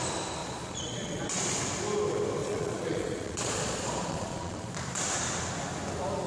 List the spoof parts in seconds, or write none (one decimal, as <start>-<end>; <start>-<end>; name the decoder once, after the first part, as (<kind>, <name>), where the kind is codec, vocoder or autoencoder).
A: 0.4-1.6 (vocoder, Vocos); 2.4-4.7